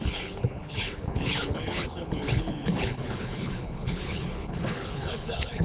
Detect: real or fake fake